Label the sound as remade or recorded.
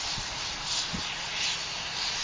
recorded